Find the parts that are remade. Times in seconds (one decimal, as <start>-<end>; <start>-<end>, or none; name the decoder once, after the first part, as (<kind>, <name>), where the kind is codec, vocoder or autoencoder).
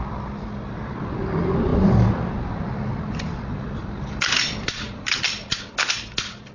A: 1.7-5.6 (vocoder, BigVGAN v2)